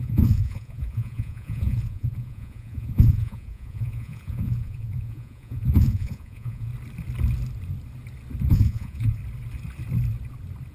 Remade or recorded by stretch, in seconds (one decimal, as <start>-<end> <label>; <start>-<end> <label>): 0.0-6.7 remade; 6.7-8.5 recorded; 8.5-9.2 remade; 9.2-10.7 recorded